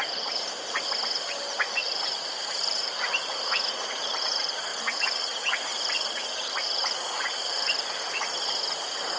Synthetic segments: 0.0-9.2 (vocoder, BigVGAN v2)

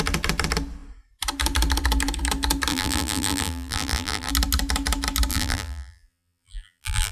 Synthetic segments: 2.7-4.3 (vocoder, BigVGAN v2); 5.3-7.1

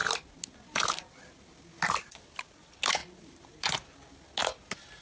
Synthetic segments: 2.5-3.0 (vocoder, BigVGAN v2)

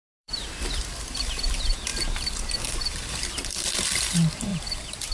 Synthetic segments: 0.0-1.9 (vocoder, BigVGAN v2); 3.7-5.1

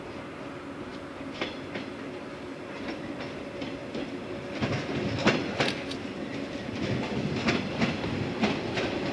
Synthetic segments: none

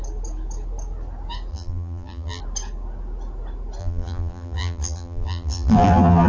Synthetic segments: 1.5-2.4 (vocoder, BigVGAN v2); 3.8-6.3

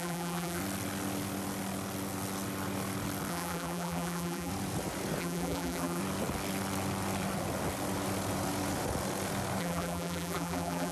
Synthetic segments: 0.0-0.6 (vocoder, BigVGAN v2); 3.3-4.5; 5.2-6.0; 9.6-10.9